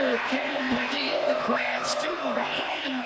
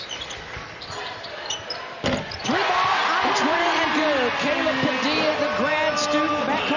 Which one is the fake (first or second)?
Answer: first